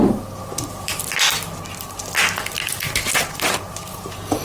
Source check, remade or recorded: recorded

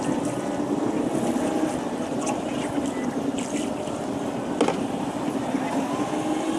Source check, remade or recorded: recorded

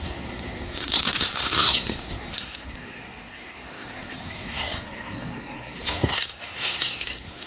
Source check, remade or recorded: remade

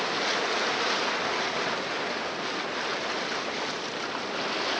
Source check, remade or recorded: recorded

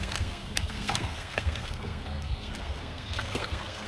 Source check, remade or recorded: remade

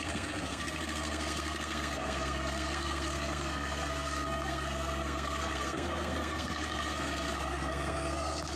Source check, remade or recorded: remade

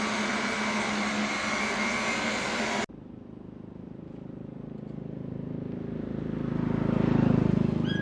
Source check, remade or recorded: recorded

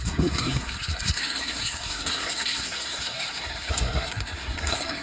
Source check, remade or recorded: remade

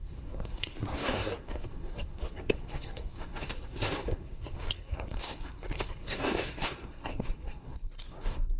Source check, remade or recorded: remade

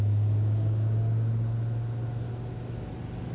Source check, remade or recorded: recorded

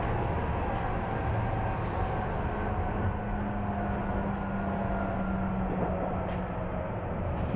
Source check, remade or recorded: recorded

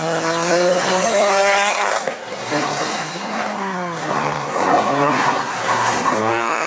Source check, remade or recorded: remade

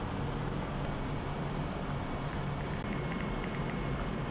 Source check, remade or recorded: recorded